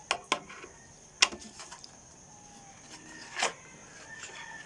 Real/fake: real